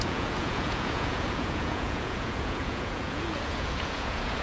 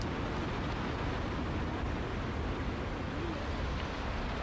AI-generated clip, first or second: first